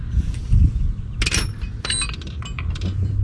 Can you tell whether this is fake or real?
real